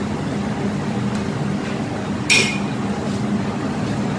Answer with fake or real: real